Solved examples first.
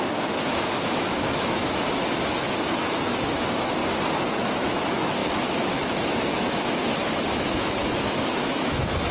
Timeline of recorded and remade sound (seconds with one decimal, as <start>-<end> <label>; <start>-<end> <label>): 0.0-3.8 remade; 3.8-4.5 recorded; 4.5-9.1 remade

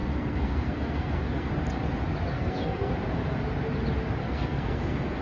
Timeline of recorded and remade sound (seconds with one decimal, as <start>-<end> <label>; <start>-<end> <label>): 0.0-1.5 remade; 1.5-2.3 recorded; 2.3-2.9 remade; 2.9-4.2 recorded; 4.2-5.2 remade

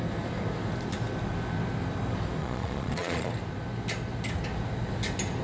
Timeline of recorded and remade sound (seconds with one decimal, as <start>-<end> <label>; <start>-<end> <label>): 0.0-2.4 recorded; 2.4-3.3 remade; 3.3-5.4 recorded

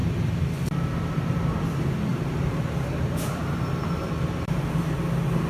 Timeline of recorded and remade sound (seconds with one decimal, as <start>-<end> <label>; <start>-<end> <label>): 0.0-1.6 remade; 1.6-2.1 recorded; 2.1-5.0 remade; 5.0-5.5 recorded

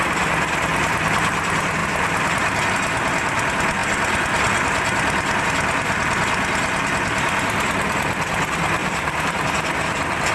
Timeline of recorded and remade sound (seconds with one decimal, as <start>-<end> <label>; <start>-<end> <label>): 0.0-1.8 recorded; 1.8-2.7 remade; 2.7-8.8 recorded; 8.8-9.5 remade; 9.5-10.3 recorded

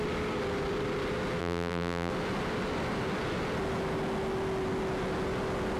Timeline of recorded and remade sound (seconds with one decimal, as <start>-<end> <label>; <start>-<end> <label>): 0.0-1.4 recorded; 1.4-2.1 remade; 2.1-5.8 recorded

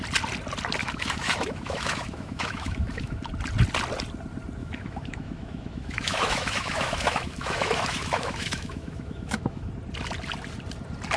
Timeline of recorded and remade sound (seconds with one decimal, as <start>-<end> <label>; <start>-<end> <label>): 0.0-0.8 recorded; 0.8-3.2 remade; 3.2-4.6 recorded; 4.6-9.7 remade; 9.7-11.2 recorded